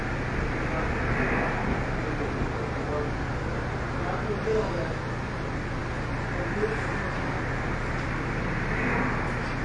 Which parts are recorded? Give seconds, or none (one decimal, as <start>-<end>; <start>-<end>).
0.0-9.6